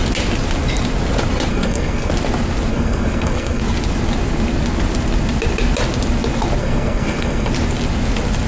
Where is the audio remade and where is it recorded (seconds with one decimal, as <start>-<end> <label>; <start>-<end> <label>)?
0.0-1.5 recorded; 1.5-2.1 remade; 2.1-2.7 recorded; 2.7-3.6 remade; 3.6-6.6 recorded; 6.6-7.5 remade; 7.5-8.5 recorded